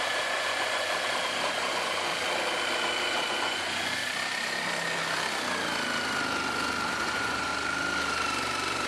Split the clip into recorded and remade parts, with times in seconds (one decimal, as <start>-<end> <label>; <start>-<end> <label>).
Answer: 0.0-2.1 remade; 2.1-3.3 recorded; 3.3-4.0 remade; 4.0-6.9 recorded; 6.9-7.5 remade; 7.5-8.9 recorded